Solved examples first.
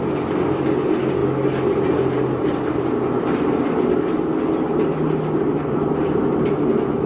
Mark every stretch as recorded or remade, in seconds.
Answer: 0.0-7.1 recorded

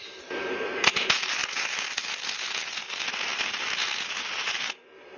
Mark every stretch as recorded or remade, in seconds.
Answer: 0.0-1.4 remade; 1.4-4.3 recorded; 4.3-5.2 remade

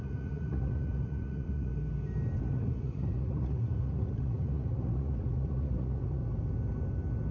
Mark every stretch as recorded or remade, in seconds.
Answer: 0.0-1.7 remade; 1.7-2.4 recorded; 2.4-6.2 remade; 6.2-7.3 recorded

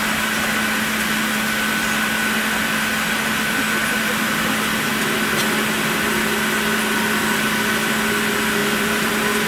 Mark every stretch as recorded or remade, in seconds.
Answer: 0.0-3.8 recorded; 3.8-4.5 remade; 4.5-8.6 recorded; 8.6-9.1 remade; 9.1-9.5 recorded

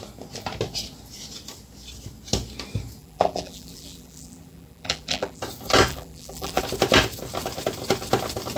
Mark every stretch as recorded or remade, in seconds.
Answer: 0.0-3.0 recorded; 3.0-5.4 remade; 5.4-5.9 recorded; 5.9-6.6 remade; 6.6-8.6 recorded